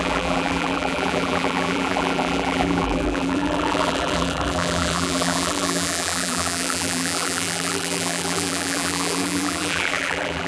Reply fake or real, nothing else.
fake